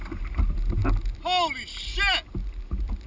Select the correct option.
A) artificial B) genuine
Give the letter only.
B